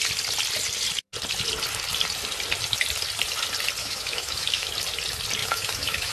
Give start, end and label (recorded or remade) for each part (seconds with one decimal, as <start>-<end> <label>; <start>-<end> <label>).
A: 0.0-3.8 recorded; 3.8-4.7 remade; 4.7-5.4 recorded; 5.4-6.1 remade